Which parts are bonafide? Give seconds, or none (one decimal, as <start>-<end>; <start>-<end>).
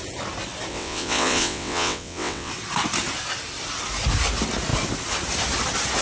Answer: 0.0-0.7; 2.5-6.0